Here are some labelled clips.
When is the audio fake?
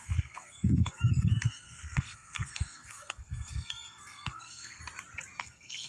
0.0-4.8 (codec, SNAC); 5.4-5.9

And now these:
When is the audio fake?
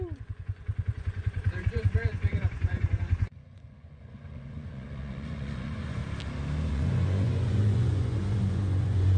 0.0-6.0 (vocoder, Vocos); 6.7-9.2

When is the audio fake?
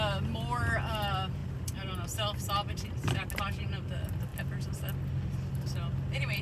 none